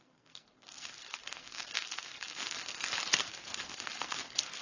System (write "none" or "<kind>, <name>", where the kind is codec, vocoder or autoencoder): codec, SNAC